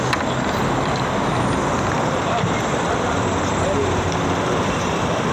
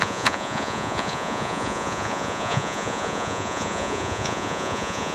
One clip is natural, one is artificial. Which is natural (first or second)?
first